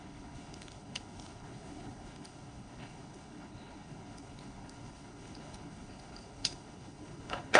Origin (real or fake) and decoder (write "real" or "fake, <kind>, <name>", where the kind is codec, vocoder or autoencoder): fake, codec, HILCodec